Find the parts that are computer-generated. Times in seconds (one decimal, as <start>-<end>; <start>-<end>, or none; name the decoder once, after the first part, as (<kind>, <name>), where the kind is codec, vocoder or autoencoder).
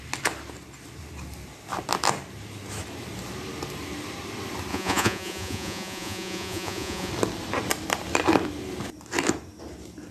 4.7-7.1 (vocoder, Vocos)